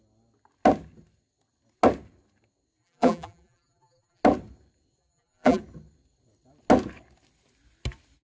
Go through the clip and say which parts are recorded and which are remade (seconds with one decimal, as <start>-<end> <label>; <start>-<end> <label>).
0.0-2.8 recorded; 2.8-4.2 remade; 4.2-5.0 recorded; 5.0-5.6 remade; 5.6-8.3 recorded